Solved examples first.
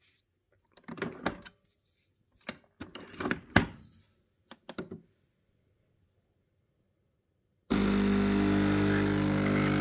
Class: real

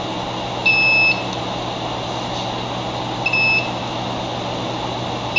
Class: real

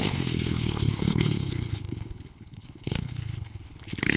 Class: fake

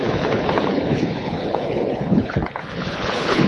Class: fake